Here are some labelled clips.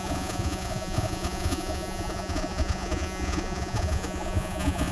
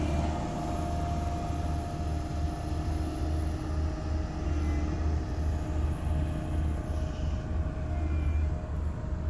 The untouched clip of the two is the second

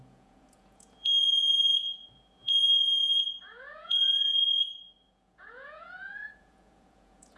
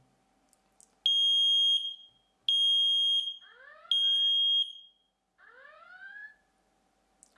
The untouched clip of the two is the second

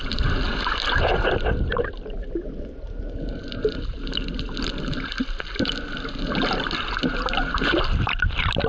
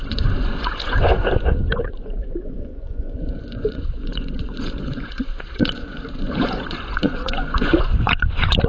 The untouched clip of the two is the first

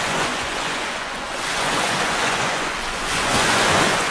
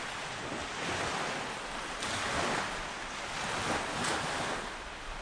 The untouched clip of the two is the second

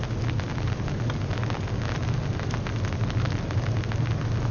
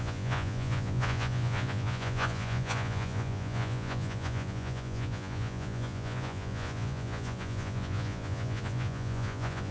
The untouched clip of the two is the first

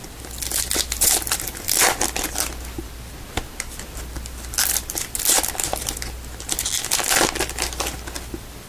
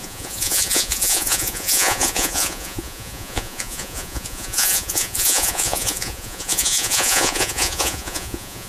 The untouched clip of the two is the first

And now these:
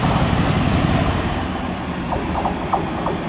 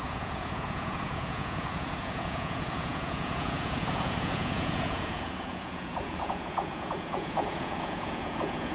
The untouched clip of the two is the first